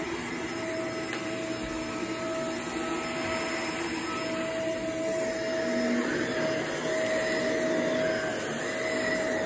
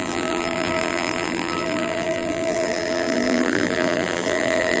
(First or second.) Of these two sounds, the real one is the first